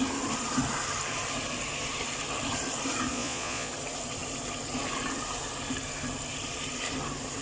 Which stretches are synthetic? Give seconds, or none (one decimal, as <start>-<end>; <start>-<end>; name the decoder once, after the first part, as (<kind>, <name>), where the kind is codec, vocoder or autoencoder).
3.1-3.7 (vocoder, Vocos)